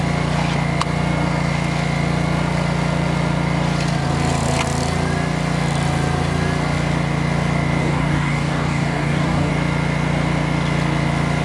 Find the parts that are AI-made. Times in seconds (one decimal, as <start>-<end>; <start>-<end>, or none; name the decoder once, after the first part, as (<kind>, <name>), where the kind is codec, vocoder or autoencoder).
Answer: 7.8-9.5 (codec, DAC)